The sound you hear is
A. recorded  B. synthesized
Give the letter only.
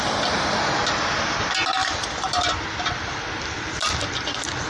B